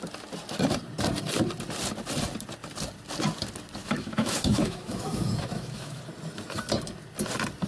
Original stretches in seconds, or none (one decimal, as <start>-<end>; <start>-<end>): 0.0-3.8; 6.0-7.7